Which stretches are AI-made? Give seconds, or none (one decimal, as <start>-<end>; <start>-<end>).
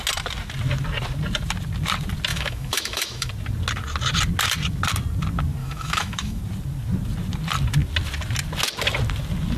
2.3-3.3; 5.6-6.4